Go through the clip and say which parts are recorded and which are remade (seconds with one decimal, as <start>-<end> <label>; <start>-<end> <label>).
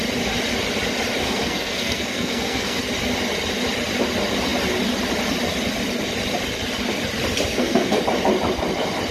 0.0-1.2 recorded; 1.2-2.8 remade; 2.8-7.5 recorded; 7.5-8.0 remade; 8.0-9.1 recorded